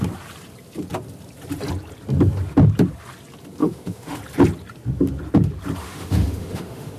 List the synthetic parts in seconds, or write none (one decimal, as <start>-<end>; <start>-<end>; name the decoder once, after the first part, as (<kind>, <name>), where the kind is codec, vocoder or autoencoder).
3.6-4.2 (autoencoder, DAC-VAE); 5.8-7.0